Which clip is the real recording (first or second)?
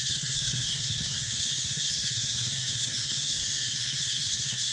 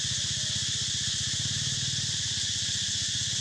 second